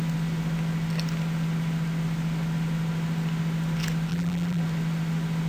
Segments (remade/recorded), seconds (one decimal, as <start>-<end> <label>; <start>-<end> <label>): 0.0-4.1 recorded; 4.1-4.6 remade; 4.6-5.5 recorded